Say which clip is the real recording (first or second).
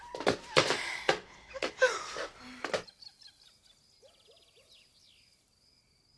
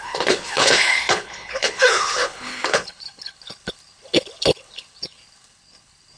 first